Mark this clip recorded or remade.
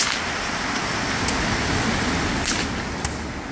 recorded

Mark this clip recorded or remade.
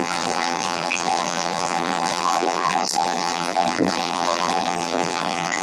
remade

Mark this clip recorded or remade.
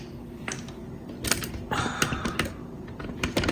recorded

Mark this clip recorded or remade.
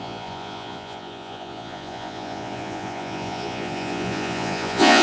remade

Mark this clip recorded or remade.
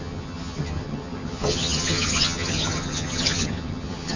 remade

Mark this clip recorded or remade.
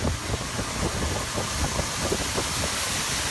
recorded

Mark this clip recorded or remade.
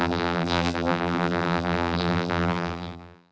remade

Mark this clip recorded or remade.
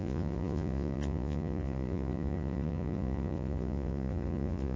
remade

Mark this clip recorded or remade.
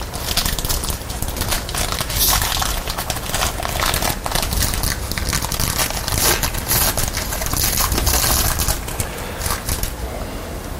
recorded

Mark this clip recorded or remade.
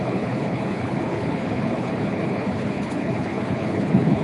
remade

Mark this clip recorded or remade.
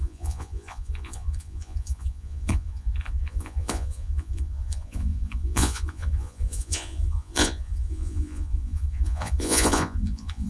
remade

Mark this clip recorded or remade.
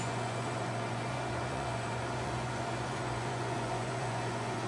remade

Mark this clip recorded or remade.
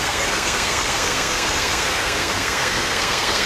remade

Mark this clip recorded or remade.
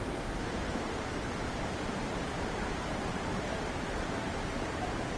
remade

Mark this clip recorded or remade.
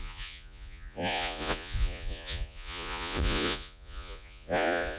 remade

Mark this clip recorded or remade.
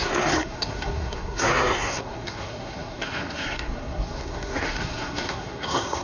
remade